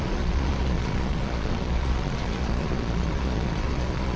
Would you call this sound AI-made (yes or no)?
yes